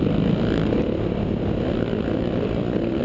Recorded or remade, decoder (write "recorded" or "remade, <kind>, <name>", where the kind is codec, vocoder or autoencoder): recorded